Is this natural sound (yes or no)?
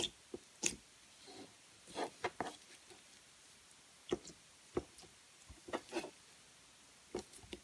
yes